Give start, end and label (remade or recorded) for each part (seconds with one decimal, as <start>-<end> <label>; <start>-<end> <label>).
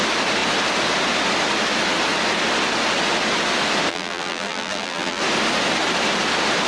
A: 0.0-3.9 recorded; 3.9-5.2 remade; 5.2-6.7 recorded